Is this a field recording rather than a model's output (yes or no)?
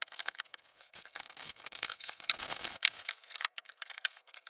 no